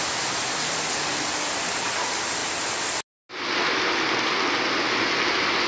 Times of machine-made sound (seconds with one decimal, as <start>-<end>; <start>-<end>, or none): none